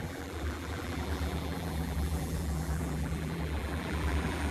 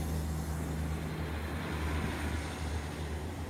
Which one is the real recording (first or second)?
second